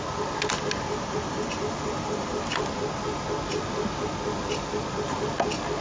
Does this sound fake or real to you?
real